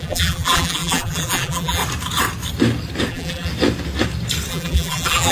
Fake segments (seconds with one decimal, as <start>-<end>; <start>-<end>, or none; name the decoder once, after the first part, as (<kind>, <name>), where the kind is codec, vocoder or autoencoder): 0.0-1.8 (vocoder, BigVGAN v2); 3.1-3.5; 4.5-5.3